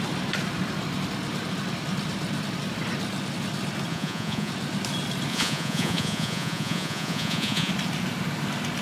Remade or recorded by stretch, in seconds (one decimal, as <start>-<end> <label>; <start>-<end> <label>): 0.0-3.9 recorded; 3.9-4.5 remade; 4.5-5.3 recorded; 5.3-7.7 remade; 7.7-8.8 recorded